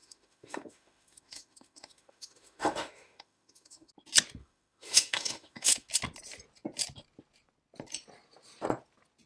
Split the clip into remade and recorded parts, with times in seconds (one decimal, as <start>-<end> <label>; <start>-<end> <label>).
0.0-3.9 remade; 3.9-4.4 recorded; 4.4-5.9 remade; 5.9-9.3 recorded